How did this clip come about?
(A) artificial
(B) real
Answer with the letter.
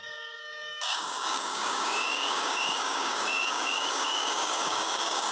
A